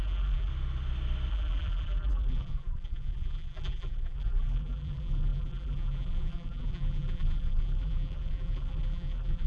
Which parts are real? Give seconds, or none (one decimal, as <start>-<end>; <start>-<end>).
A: 0.5-1.3